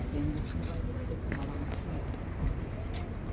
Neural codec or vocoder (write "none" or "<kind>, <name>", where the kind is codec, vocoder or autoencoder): none